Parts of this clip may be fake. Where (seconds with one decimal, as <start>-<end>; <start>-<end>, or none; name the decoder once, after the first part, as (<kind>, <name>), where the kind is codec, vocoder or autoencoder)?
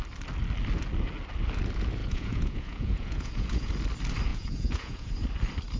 2.0-3.7 (vocoder, Vocos); 4.3-5.1